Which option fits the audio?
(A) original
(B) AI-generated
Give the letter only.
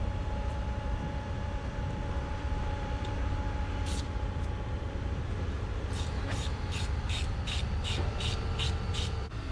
B